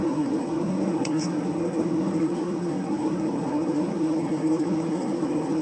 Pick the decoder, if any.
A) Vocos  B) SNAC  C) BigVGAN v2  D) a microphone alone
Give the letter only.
B